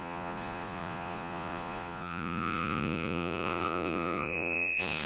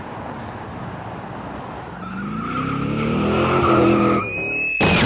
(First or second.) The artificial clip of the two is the first